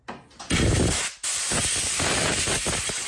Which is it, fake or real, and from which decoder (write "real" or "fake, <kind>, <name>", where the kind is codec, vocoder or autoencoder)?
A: real